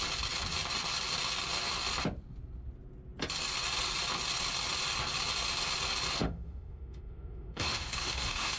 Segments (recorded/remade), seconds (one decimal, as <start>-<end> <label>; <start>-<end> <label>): 0.0-6.2 recorded; 6.2-8.6 remade